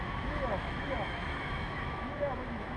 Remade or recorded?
remade